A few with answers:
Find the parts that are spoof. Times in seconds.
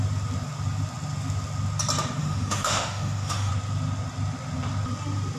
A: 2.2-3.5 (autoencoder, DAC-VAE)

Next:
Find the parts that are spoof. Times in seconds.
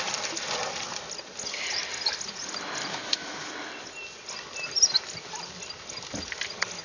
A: 2.9-3.5 (autoencoder, DAC-VAE)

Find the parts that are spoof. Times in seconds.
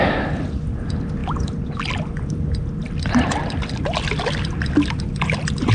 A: none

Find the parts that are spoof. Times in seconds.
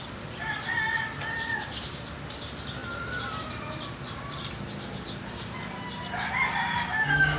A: none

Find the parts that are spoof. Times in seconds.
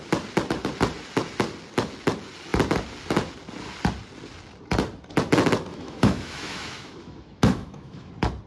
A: 5.7-8.1 (autoencoder, DAC-VAE)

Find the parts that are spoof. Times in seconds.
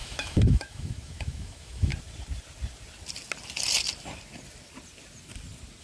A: 0.0-1.9 (autoencoder, DAC-VAE)